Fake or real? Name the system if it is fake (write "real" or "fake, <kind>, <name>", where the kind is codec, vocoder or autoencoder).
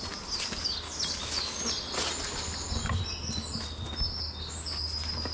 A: real